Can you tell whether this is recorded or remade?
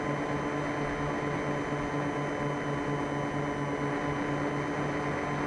recorded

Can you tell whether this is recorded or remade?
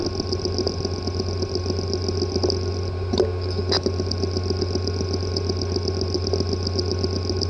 recorded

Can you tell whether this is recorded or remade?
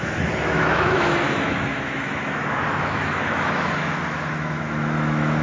remade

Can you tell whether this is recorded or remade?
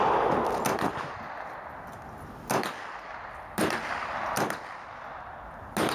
recorded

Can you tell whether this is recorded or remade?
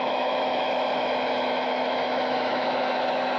remade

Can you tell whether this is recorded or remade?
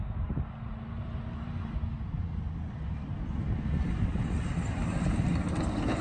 recorded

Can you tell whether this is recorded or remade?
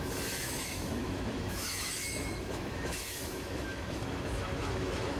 remade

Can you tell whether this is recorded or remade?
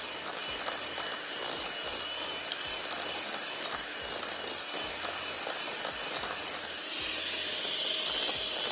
recorded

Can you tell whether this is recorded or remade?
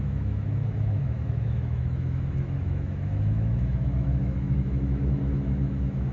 remade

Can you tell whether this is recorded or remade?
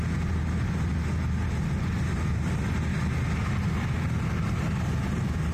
recorded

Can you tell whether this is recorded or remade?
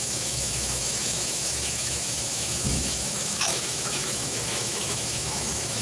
remade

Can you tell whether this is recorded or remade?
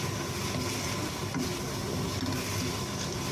recorded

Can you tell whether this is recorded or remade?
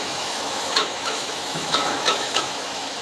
remade